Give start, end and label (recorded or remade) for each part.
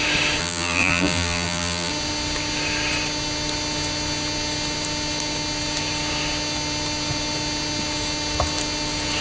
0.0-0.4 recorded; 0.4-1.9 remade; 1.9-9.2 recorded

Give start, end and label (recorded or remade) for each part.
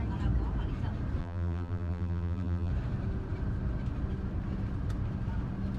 0.0-1.2 recorded; 1.2-2.7 remade; 2.7-5.8 recorded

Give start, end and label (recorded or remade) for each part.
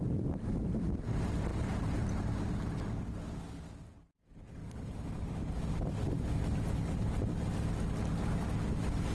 0.0-1.5 recorded; 1.5-3.2 remade; 3.2-4.6 recorded; 4.6-5.4 remade; 5.4-9.1 recorded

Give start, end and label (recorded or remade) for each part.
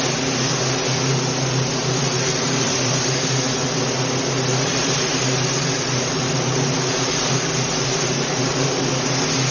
0.0-1.8 recorded; 1.8-3.7 remade; 3.7-4.5 recorded; 4.5-8.8 remade; 8.8-9.5 recorded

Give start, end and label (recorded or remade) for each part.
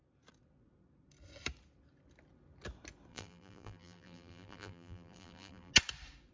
0.0-3.1 recorded; 3.1-5.7 remade; 5.7-6.3 recorded